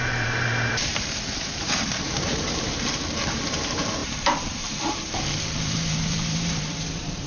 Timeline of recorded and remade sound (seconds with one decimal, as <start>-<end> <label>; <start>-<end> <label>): 0.0-7.3 remade